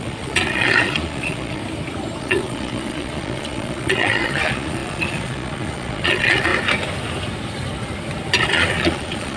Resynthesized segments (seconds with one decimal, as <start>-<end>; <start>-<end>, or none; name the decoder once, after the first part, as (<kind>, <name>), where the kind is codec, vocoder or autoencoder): 0.0-1.6 (vocoder, Vocos); 2.2-6.5; 8.4-9.4